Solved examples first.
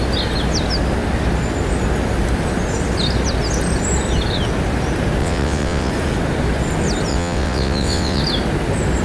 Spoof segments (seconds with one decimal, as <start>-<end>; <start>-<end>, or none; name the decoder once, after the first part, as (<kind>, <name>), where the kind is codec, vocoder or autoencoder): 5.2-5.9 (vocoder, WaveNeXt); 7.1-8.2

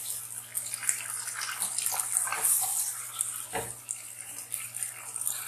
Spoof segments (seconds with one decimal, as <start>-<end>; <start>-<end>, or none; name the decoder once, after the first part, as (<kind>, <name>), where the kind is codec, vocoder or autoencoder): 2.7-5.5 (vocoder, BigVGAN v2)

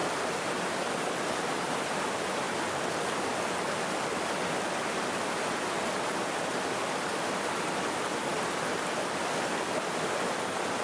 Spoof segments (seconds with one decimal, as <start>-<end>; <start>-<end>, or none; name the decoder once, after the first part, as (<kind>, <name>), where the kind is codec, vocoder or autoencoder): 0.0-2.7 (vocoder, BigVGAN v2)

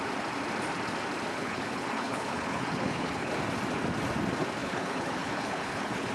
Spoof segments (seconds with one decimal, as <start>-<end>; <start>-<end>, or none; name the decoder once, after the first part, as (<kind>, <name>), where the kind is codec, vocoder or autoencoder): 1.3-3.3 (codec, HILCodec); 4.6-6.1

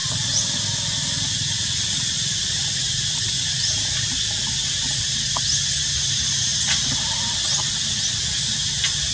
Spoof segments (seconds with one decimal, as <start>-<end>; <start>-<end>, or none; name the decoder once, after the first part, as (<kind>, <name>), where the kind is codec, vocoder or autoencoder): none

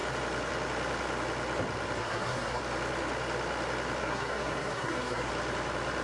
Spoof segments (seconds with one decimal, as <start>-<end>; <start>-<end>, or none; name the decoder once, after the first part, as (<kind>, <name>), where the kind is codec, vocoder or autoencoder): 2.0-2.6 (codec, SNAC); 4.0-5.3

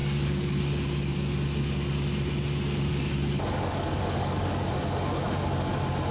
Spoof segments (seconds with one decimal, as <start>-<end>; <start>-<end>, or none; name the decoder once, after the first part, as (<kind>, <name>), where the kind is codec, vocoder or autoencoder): 0.0-0.6 (codec, DAC); 2.9-4.7

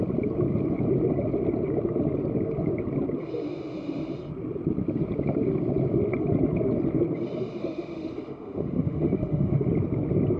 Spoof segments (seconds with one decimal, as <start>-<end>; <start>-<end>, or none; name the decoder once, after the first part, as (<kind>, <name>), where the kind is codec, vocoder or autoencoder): 7.6-9.7 (autoencoder, DAC-VAE)